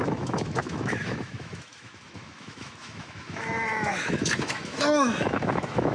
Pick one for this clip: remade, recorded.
remade